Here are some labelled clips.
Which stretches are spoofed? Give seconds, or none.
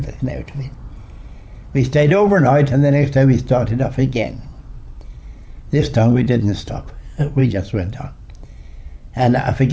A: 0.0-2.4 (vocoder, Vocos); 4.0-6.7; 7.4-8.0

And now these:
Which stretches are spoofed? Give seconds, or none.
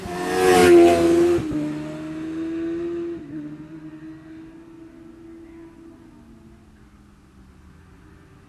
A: none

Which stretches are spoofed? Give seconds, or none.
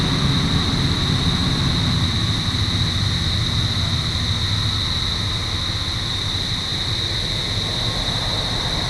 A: none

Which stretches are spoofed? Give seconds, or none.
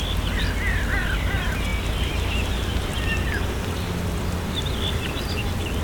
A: none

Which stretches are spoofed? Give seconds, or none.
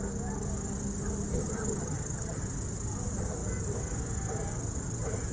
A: 1.3-2.4 (vocoder, HiFi-GAN)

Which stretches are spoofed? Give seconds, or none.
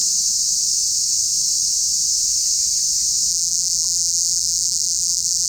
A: 3.3-5.5 (vocoder, BigVGAN v2)